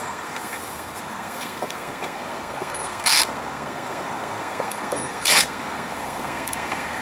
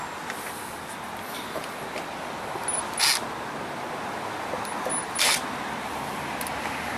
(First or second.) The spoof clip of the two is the first